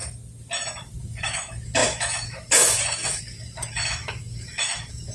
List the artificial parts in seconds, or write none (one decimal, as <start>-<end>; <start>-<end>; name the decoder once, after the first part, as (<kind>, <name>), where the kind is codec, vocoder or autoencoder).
1.0-5.1 (autoencoder, DAC-VAE)